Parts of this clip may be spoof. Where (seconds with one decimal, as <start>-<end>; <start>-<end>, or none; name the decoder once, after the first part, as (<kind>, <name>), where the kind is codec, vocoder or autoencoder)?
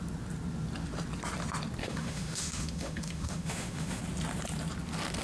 1.8-4.0 (autoencoder, DAC-VAE)